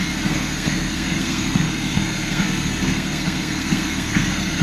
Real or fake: fake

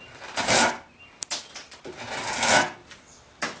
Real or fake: real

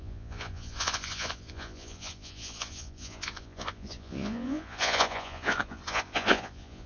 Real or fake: fake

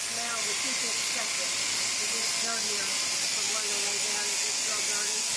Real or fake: real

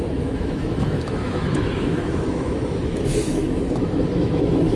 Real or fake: fake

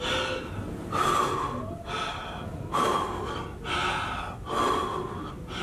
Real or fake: real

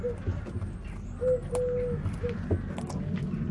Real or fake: real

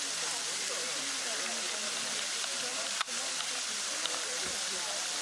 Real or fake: real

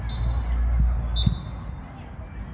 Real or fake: real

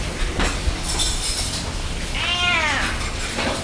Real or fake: real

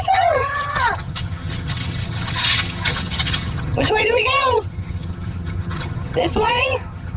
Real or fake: fake